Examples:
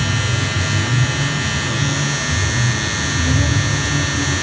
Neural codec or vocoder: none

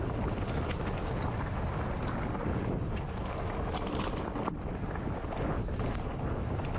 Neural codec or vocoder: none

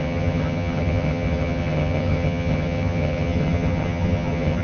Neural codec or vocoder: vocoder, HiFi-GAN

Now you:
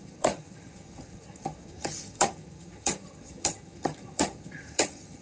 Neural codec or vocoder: vocoder, HiFi-GAN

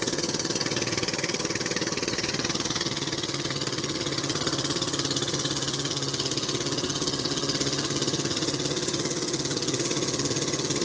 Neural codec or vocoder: vocoder, HiFi-GAN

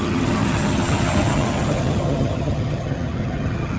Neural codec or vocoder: vocoder, HiFi-GAN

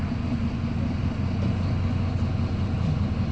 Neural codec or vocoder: none